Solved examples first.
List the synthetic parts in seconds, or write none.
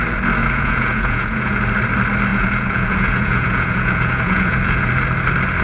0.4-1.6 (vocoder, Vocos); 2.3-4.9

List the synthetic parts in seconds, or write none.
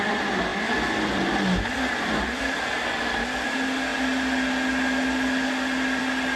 none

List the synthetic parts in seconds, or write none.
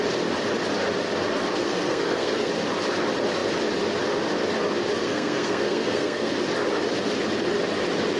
1.6-2.5 (codec, SNAC); 5.0-6.3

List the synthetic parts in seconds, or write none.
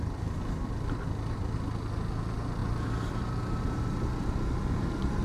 none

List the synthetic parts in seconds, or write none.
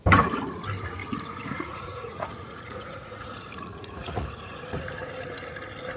1.0-4.6 (vocoder, Vocos)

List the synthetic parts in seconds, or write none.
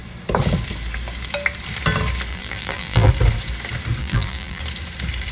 2.3-3.1 (vocoder, BigVGAN v2); 4.0-4.6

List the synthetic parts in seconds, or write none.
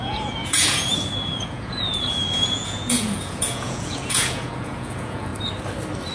0.0-5.3 (vocoder, Vocos)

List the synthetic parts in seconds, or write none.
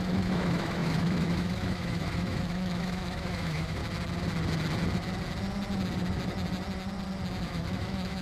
0.0-3.8 (autoencoder, DAC-VAE); 7.4-8.2